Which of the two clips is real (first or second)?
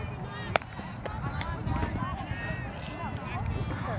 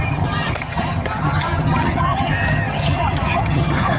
first